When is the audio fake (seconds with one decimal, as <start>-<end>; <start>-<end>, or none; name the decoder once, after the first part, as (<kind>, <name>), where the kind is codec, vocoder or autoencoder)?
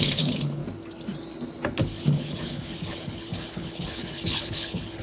0.0-0.6 (codec, HILCodec); 2.0-5.0